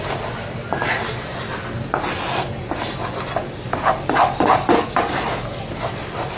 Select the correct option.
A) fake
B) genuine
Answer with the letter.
B